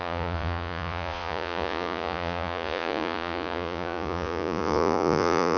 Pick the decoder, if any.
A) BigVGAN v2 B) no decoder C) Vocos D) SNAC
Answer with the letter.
C